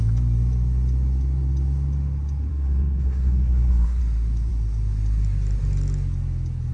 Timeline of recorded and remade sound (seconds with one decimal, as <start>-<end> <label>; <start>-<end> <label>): 0.0-2.5 recorded; 2.5-4.0 remade; 4.0-6.7 recorded